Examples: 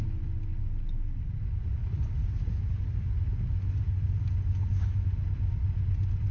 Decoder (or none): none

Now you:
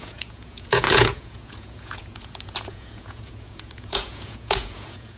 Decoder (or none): vocoder, Vocos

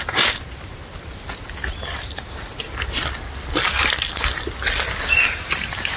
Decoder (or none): none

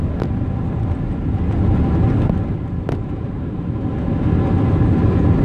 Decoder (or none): none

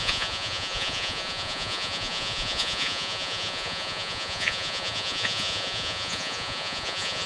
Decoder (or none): vocoder, Vocos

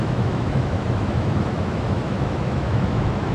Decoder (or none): autoencoder, DAC-VAE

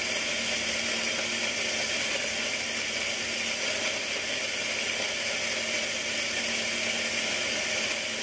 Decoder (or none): none